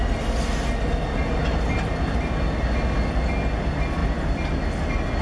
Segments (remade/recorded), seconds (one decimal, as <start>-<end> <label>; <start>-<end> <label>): 0.0-5.2 recorded